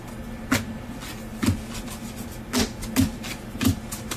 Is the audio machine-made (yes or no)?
no